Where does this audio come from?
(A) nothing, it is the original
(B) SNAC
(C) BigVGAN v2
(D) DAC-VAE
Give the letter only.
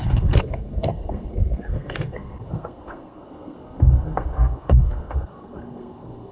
B